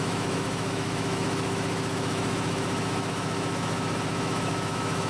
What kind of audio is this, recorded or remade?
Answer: remade